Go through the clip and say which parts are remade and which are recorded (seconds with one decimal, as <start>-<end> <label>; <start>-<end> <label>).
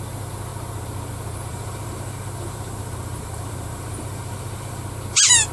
0.0-1.5 recorded; 1.5-4.8 remade; 4.8-5.5 recorded